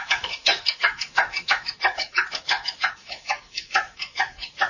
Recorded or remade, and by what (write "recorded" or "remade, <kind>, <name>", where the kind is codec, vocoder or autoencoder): remade, autoencoder, DAC-VAE